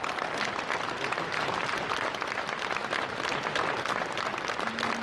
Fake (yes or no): no